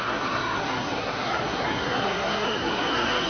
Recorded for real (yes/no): no